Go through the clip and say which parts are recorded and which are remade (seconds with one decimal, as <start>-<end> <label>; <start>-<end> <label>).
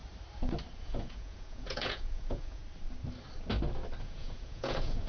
0.0-0.8 recorded; 0.8-2.6 remade; 2.6-4.0 recorded; 4.0-5.1 remade